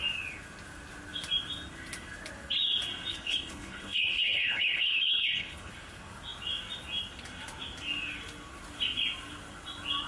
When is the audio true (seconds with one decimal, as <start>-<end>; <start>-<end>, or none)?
0.0-3.1; 5.7-10.1